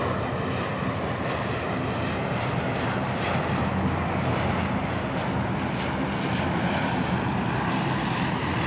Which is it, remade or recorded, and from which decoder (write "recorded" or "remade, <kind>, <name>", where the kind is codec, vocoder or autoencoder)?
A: recorded